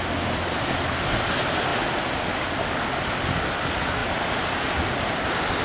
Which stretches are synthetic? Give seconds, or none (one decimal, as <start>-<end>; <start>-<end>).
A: none